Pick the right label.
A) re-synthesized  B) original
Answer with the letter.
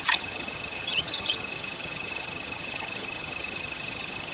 A